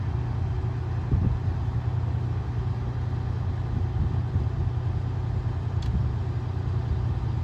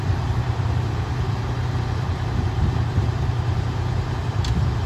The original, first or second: first